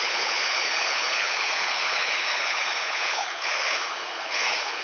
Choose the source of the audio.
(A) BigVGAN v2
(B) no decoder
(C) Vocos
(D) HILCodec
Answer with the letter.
D